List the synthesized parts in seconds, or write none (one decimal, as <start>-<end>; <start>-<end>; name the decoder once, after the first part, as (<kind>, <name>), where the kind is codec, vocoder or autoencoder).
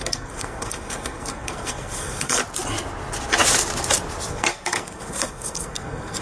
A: 0.0-2.4 (codec, SNAC); 4.3-6.2